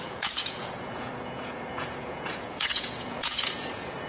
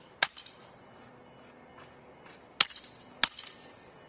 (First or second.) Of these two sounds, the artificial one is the first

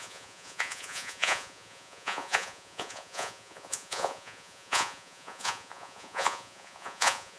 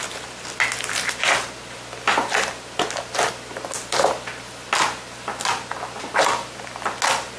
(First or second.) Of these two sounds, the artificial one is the first